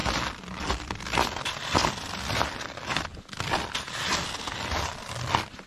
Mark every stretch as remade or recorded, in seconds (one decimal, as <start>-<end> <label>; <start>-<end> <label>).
0.0-5.7 recorded

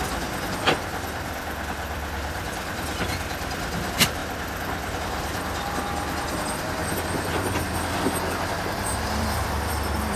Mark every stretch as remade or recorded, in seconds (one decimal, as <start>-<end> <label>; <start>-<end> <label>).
0.0-4.2 remade; 4.2-5.0 recorded; 5.0-6.8 remade; 6.8-8.9 recorded; 8.9-10.2 remade

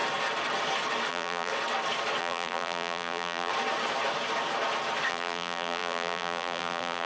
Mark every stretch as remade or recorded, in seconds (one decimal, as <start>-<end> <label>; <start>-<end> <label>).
0.0-1.1 recorded; 1.1-1.5 remade; 1.5-2.2 recorded; 2.2-3.5 remade; 3.5-5.1 recorded; 5.1-7.1 remade

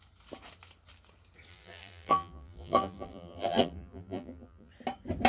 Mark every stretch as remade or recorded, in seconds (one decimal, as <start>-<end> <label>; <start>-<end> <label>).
0.0-1.5 recorded; 1.5-4.7 remade; 4.7-5.3 recorded

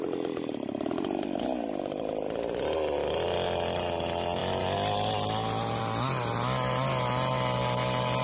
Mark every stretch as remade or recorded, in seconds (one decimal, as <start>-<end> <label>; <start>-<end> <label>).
0.0-8.2 recorded